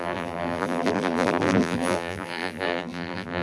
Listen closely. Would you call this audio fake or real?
fake